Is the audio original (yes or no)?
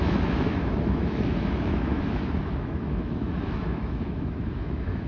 no